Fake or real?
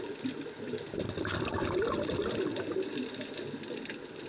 real